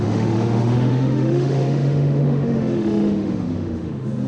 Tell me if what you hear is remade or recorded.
remade